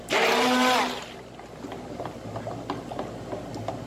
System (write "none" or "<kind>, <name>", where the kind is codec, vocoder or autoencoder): none